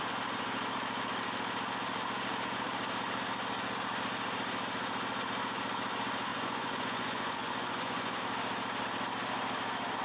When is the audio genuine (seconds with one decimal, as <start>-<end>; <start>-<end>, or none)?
0.0-6.3; 8.2-10.0